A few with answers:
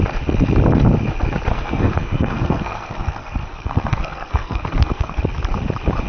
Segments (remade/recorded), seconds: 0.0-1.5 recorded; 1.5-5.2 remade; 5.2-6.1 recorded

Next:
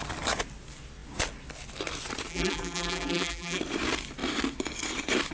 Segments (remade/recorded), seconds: 0.0-2.3 recorded; 2.3-3.6 remade; 3.6-5.3 recorded

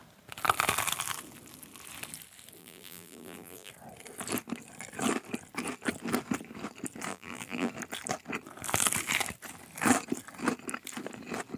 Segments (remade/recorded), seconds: 0.0-2.6 recorded; 2.6-3.7 remade; 3.7-7.1 recorded; 7.1-7.7 remade; 7.7-11.6 recorded